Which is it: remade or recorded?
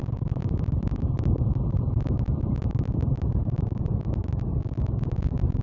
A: remade